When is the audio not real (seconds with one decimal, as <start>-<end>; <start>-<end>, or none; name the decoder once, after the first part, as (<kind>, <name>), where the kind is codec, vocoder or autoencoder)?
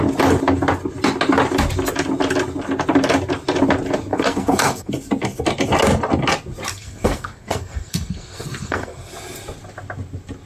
4.1-4.9 (codec, SNAC); 6.7-9.1